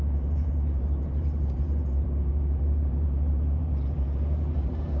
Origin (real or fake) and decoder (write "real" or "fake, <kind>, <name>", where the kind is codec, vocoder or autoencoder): fake, vocoder, BigVGAN v2